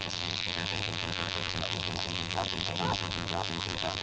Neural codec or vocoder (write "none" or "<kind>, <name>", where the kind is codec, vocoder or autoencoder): vocoder, BigVGAN v2